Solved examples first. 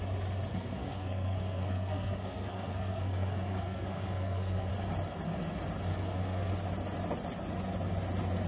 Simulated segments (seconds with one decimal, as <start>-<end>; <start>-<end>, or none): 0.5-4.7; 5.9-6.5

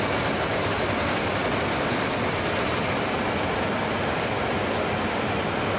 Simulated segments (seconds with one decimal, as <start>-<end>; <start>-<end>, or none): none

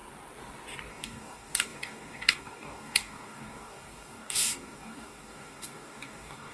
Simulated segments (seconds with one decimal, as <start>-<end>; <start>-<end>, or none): 0.9-6.5